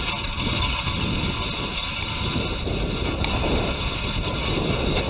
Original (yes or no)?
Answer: yes